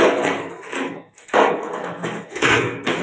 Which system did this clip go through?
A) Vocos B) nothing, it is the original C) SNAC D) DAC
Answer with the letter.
C